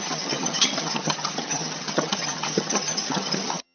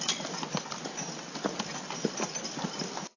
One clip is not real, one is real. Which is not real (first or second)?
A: first